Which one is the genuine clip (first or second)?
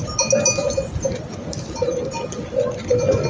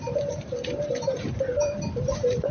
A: first